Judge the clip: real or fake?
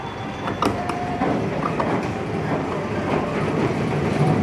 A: fake